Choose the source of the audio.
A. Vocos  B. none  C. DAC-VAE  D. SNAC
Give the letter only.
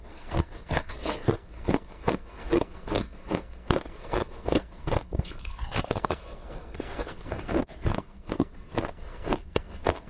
D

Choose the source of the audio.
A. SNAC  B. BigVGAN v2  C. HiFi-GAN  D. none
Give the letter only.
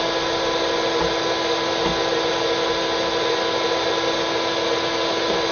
D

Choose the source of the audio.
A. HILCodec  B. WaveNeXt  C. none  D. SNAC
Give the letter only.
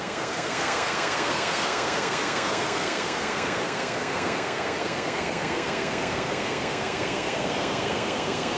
D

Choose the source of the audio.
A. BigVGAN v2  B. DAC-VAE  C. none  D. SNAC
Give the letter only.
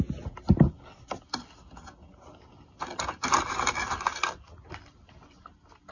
C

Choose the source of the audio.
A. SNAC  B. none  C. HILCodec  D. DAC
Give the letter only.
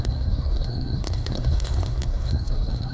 A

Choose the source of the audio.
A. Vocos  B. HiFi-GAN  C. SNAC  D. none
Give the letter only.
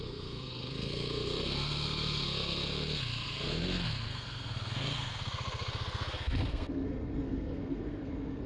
C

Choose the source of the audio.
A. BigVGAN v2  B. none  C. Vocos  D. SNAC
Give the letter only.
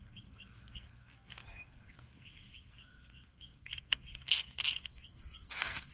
D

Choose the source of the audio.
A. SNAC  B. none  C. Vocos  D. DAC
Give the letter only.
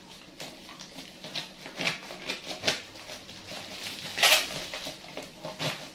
B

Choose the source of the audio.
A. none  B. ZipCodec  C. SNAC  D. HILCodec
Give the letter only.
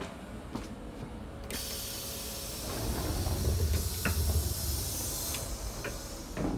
A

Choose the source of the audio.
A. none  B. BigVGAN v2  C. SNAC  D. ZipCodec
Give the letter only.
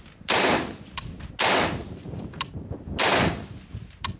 A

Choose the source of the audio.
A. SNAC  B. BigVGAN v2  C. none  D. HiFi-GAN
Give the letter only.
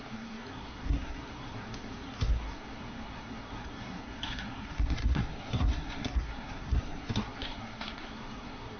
A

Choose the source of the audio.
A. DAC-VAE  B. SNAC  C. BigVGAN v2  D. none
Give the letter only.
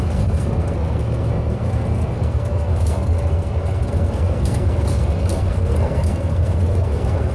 B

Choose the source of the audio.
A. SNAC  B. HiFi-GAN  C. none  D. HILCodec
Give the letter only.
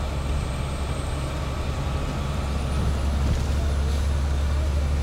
C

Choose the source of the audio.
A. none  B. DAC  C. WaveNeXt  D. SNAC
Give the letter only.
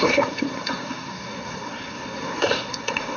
D